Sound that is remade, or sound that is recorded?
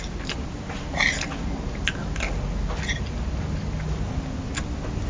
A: recorded